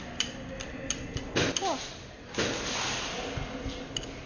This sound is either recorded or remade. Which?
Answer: recorded